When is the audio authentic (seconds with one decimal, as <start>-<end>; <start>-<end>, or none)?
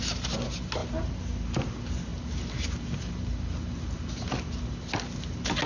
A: 0.0-0.8; 1.7-5.7